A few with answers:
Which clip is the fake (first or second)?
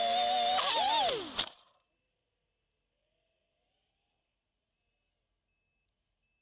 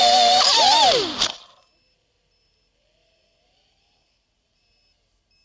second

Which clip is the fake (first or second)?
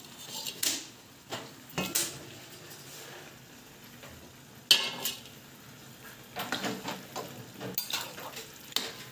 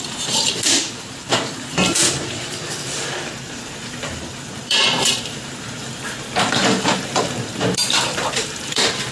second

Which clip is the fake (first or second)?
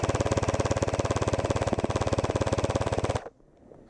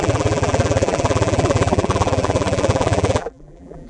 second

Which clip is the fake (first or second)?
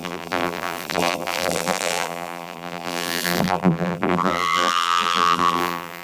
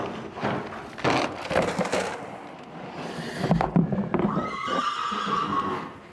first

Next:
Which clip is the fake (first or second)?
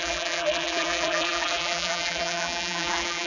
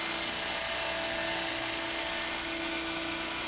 first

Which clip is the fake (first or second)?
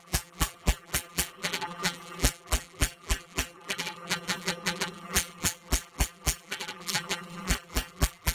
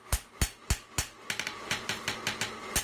first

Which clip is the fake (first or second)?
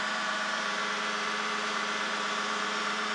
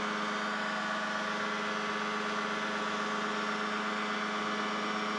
first